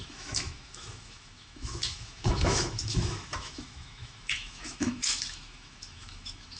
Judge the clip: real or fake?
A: fake